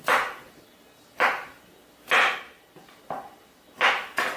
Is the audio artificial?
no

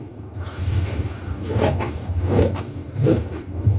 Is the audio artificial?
yes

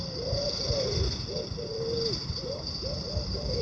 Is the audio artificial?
no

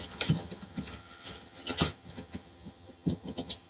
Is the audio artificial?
yes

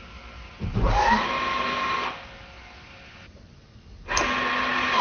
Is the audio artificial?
no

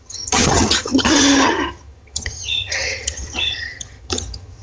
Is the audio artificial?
yes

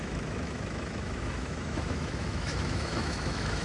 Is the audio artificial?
yes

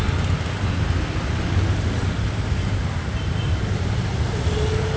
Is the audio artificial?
no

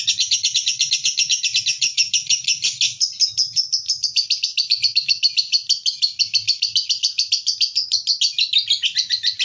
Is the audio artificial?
no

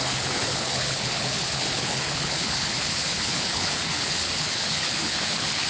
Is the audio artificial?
yes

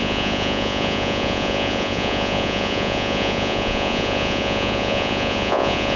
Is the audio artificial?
yes